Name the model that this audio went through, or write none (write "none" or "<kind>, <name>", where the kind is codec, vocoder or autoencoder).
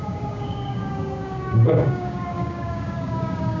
codec, DAC